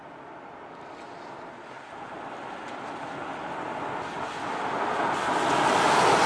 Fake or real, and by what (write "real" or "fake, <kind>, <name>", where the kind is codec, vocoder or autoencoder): real